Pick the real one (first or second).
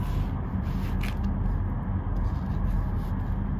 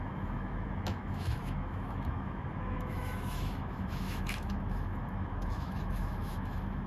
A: first